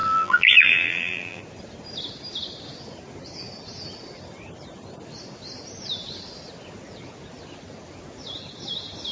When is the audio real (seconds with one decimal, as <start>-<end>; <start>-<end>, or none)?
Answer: 1.4-9.1